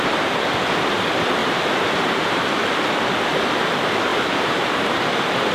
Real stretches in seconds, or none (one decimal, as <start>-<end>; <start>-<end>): 0.0-1.4; 2.5-4.1; 5.0-5.5